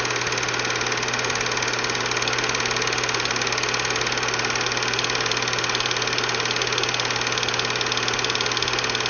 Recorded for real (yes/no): yes